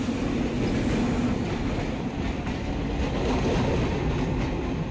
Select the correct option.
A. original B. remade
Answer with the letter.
A